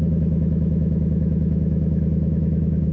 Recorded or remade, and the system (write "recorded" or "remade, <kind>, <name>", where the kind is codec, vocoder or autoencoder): remade, autoencoder, DAC-VAE